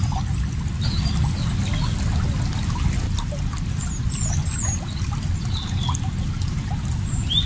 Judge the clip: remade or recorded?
recorded